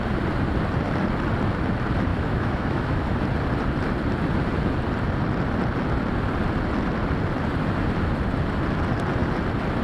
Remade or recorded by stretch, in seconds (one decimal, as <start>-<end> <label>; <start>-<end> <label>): 0.0-2.1 recorded; 2.1-3.2 remade; 3.2-9.8 recorded